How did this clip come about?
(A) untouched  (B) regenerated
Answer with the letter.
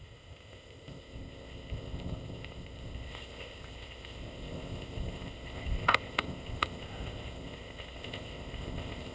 B